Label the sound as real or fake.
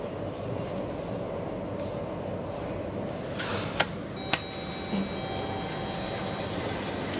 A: real